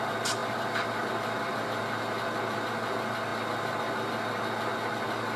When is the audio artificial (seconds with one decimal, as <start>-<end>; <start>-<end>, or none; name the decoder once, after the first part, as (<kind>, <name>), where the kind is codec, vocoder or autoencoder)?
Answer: 0.4-1.8 (vocoder, BigVGAN v2); 3.3-3.8